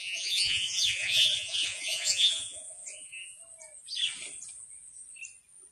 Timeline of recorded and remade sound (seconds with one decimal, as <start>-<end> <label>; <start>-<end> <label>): 0.0-3.4 remade; 3.4-5.7 recorded